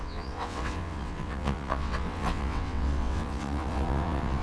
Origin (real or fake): fake